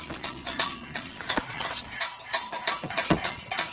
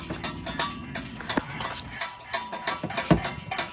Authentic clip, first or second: second